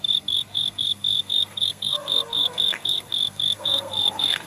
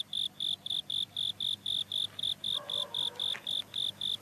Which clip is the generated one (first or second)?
first